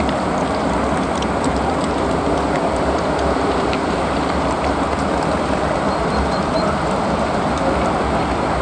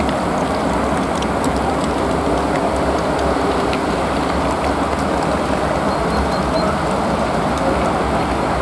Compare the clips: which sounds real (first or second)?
second